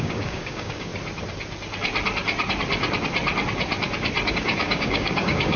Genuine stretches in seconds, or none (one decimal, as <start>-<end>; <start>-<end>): 0.9-4.3